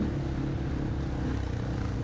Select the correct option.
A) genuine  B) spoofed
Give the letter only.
A